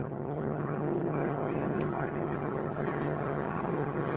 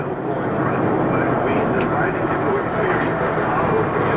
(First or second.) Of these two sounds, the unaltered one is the second